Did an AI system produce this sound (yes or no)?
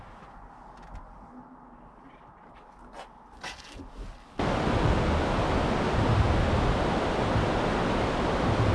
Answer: no